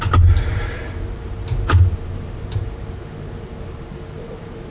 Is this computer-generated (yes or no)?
yes